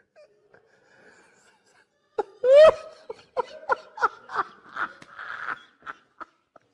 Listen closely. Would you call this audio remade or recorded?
recorded